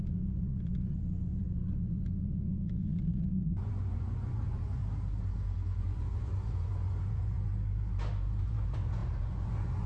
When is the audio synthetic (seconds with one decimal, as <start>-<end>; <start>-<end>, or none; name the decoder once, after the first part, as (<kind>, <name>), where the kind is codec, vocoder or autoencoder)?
0.0-4.8 (vocoder, Vocos); 5.8-7.5; 8.4-9.9

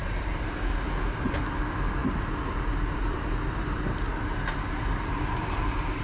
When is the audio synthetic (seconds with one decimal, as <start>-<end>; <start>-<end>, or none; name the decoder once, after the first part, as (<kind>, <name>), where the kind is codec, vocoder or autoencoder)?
none